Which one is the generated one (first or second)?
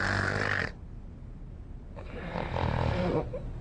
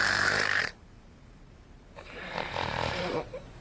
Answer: second